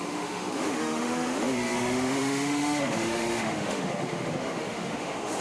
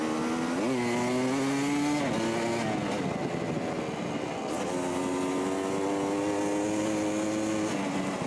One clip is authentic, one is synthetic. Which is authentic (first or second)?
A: second